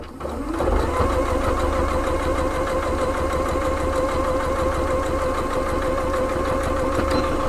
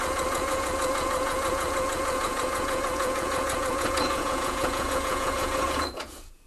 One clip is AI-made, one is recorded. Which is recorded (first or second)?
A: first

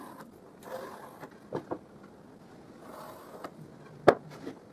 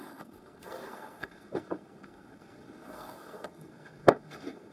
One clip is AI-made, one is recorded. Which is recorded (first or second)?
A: first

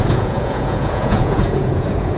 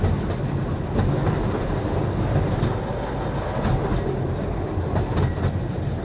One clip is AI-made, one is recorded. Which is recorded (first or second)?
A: second